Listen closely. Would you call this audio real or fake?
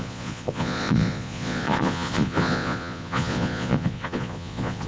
fake